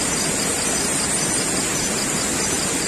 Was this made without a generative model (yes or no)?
yes